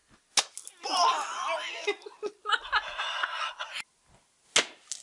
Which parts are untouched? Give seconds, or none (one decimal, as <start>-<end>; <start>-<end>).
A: 0.0-5.0